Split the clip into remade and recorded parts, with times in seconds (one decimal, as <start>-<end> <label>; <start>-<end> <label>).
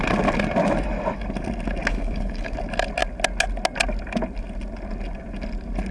0.0-1.9 recorded; 1.9-2.5 remade; 2.5-5.9 recorded